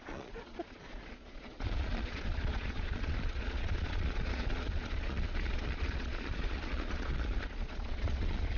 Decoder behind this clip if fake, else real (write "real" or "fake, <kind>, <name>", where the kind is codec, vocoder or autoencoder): fake, vocoder, Vocos